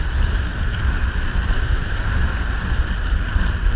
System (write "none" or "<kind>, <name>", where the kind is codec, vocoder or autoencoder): vocoder, BigVGAN v2